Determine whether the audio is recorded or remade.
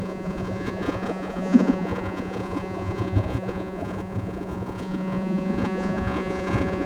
remade